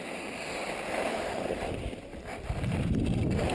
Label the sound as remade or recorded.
remade